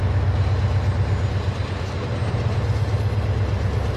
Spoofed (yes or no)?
no